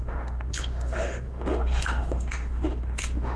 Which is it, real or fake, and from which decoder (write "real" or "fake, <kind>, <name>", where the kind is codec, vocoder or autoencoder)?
fake, autoencoder, DAC-VAE